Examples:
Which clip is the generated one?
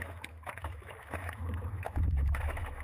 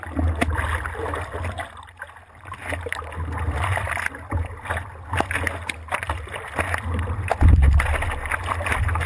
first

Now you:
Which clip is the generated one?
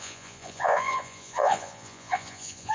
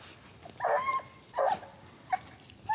first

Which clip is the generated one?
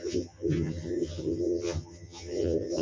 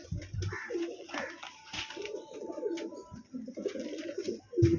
first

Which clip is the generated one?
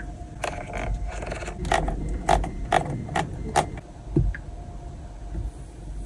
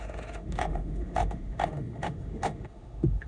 second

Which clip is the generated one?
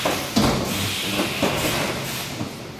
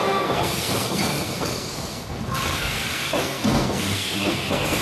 second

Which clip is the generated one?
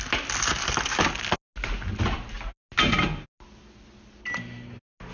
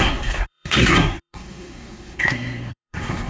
second